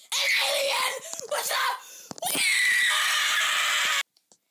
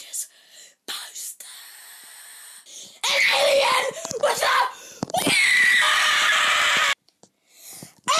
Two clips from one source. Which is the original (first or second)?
first